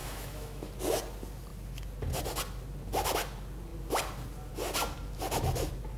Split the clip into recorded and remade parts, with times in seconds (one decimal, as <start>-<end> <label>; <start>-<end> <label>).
0.0-0.7 remade; 0.7-6.0 recorded